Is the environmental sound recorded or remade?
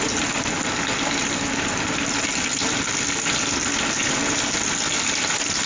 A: recorded